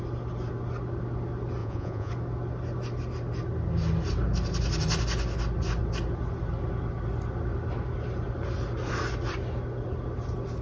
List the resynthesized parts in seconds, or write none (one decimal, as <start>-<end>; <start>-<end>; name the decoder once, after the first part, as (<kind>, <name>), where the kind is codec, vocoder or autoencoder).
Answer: 1.6-2.1 (vocoder, Vocos)